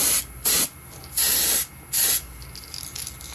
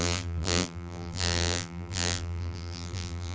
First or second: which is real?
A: first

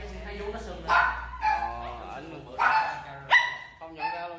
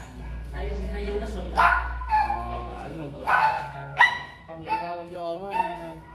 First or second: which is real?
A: first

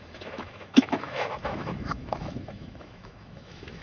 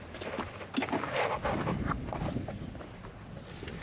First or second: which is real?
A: second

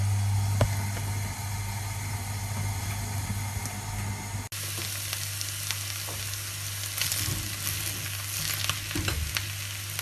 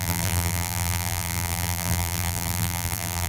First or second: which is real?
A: first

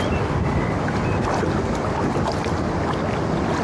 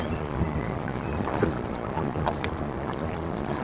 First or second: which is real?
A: first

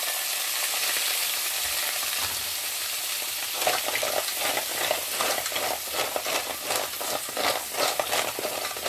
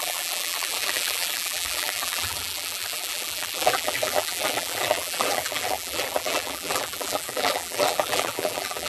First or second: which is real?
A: first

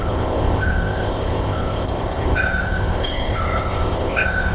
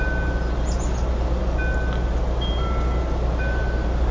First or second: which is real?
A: second